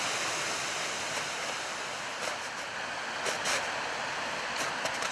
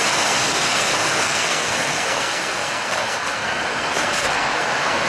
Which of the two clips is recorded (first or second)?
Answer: first